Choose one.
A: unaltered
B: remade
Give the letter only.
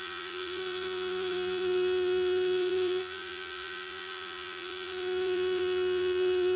B